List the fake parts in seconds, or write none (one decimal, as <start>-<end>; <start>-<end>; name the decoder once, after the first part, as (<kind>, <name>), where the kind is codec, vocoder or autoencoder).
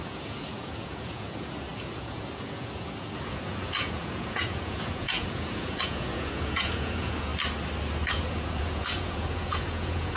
0.0-7.3 (vocoder, Vocos); 8.1-10.2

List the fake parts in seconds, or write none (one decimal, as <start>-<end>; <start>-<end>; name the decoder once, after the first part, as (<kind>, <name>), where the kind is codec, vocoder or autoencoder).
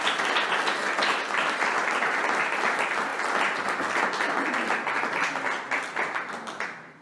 none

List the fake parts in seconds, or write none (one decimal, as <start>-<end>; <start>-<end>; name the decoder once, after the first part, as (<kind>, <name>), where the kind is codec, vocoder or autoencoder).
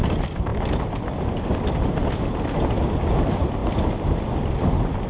none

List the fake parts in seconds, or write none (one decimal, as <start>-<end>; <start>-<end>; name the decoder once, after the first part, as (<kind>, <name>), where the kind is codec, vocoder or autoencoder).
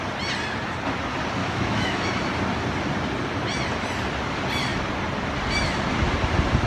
1.4-2.1 (autoencoder, DAC-VAE)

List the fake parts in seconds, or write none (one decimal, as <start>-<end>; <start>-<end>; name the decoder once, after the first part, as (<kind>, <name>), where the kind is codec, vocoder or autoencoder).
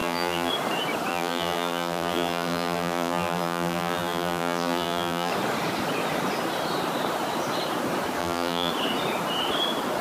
0.0-0.5 (vocoder, BigVGAN v2); 1.1-5.3; 8.2-8.7